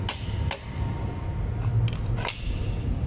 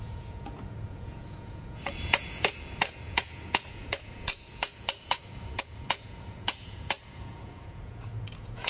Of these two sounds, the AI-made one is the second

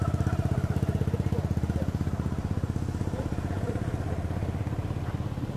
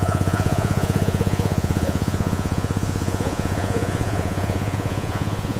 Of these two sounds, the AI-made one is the second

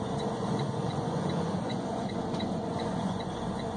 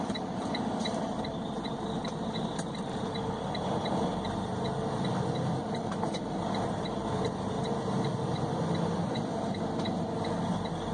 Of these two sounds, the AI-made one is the first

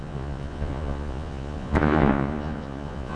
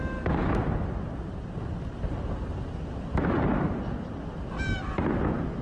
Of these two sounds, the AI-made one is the first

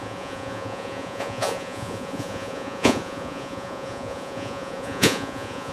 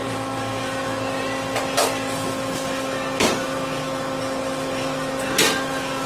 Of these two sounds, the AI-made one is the first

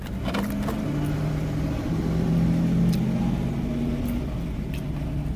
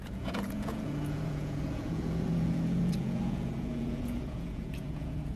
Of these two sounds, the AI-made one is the second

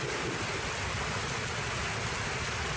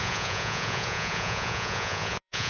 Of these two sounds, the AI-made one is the second